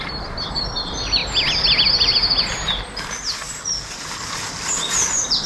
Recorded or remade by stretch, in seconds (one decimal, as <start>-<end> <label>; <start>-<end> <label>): 0.0-5.5 recorded